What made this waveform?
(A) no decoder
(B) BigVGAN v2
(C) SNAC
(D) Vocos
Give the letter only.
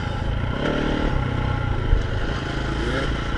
A